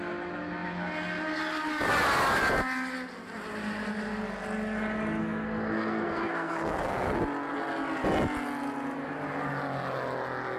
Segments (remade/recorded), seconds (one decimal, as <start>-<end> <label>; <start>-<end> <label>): 0.0-5.2 recorded; 5.2-7.2 remade; 7.2-10.6 recorded